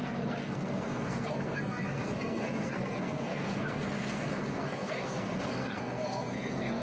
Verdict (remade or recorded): remade